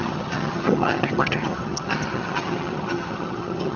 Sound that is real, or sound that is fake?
fake